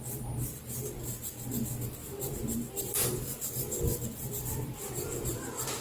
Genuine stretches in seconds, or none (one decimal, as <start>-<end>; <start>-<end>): 0.0-2.0; 2.8-3.4; 5.3-5.8